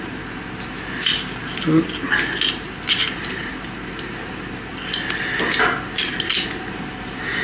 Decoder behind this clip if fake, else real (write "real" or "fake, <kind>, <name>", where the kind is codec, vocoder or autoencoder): real